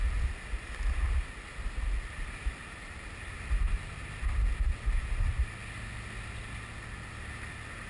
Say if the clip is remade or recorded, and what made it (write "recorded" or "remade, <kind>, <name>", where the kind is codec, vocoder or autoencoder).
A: recorded